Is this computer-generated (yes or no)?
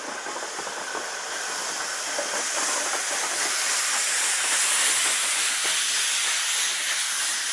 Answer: no